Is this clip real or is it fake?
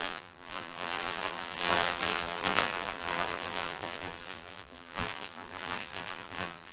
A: fake